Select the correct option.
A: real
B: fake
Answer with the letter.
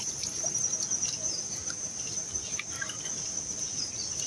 A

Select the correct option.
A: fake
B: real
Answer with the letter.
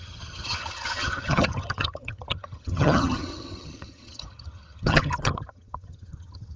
A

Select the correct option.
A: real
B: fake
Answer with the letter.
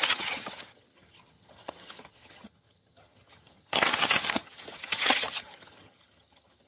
B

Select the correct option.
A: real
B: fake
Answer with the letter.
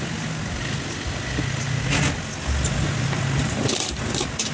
A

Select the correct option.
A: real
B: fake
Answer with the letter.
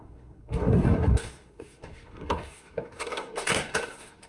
B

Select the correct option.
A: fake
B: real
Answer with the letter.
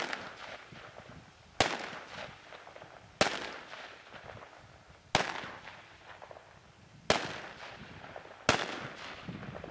B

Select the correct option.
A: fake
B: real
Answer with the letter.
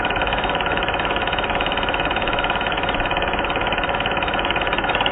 A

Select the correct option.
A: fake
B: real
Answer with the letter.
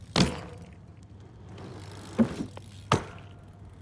B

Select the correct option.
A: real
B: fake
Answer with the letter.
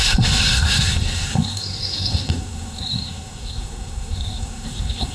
B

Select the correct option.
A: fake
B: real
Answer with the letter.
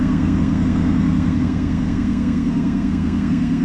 A